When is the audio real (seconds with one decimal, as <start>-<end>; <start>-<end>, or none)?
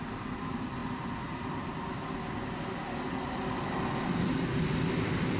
0.0-5.4